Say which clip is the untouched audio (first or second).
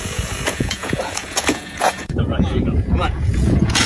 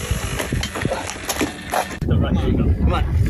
second